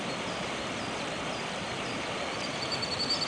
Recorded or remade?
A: recorded